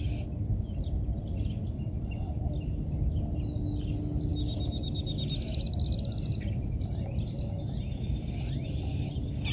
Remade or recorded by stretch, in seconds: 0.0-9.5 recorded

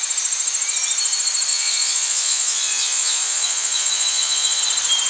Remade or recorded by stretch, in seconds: 0.0-1.5 recorded; 1.5-4.6 remade; 4.6-5.1 recorded

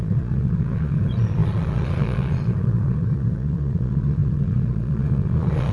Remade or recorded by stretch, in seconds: 0.0-5.7 remade

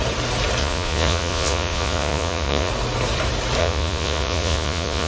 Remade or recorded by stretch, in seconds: 0.0-0.6 recorded; 0.6-2.7 remade; 2.7-3.6 recorded; 3.6-5.1 remade

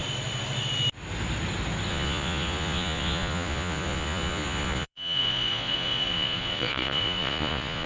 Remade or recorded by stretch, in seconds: 0.0-1.9 recorded; 1.9-7.9 remade